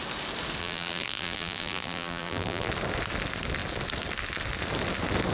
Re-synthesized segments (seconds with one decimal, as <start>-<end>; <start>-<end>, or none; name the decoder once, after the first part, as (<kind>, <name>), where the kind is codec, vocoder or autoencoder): 0.6-2.7 (vocoder, BigVGAN v2)